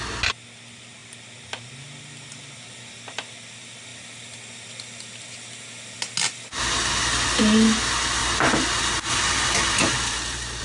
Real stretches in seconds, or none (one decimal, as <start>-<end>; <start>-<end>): 0.0-10.6